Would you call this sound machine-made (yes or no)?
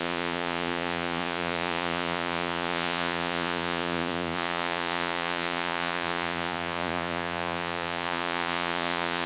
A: yes